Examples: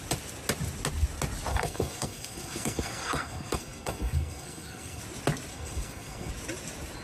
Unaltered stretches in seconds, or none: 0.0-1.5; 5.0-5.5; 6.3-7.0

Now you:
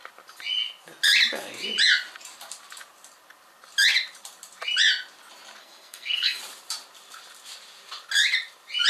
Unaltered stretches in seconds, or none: 0.0-5.6; 6.4-8.9

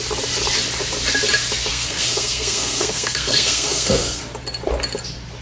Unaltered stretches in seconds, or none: 0.0-1.7; 4.2-5.4

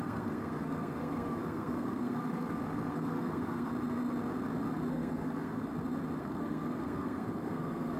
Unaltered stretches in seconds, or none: 3.7-4.9; 5.7-6.2

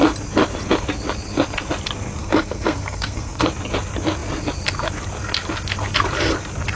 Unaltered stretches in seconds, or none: 0.0-2.2; 3.5-6.8

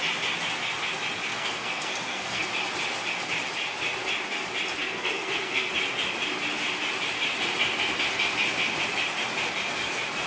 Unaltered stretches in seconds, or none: 0.0-1.3; 2.5-4.8; 5.7-10.3

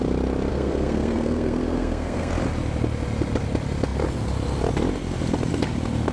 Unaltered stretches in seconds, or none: 0.0-0.5; 2.3-6.1

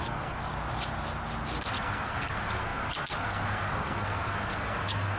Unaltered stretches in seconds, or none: 0.5-1.6